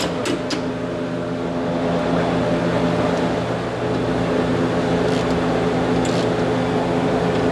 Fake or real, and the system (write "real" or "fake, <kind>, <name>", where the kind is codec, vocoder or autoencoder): real